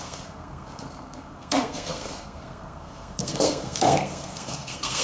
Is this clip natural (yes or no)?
no